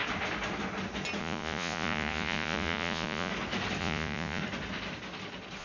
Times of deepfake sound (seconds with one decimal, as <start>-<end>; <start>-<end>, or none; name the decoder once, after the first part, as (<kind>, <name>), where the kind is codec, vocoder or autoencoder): 1.2-3.3 (vocoder, Vocos); 3.8-4.4